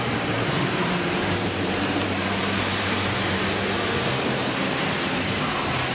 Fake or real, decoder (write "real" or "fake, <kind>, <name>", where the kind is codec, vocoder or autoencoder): fake, vocoder, BigVGAN v2